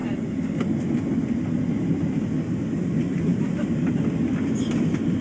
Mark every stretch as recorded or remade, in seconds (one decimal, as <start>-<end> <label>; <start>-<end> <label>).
0.0-3.3 recorded; 3.3-3.8 remade; 3.8-5.2 recorded